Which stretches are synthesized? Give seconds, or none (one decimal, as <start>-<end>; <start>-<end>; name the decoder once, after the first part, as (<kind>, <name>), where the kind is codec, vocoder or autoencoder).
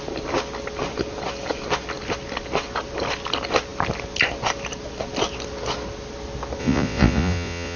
6.6-7.8 (vocoder, Vocos)